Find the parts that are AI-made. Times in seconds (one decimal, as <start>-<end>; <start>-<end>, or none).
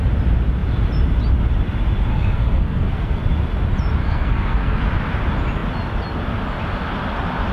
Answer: 2.1-3.2; 4.0-4.8